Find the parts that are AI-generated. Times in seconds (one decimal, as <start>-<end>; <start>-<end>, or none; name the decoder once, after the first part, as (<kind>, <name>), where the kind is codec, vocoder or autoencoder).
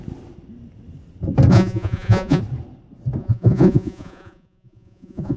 1.5-2.4 (vocoder, Vocos); 3.2-5.4